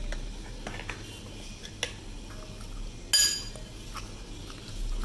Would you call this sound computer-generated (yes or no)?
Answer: no